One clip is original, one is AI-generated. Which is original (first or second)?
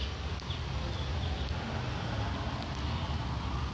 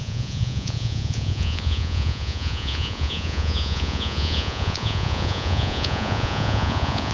first